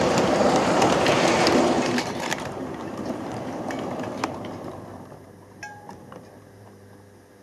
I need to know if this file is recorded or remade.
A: remade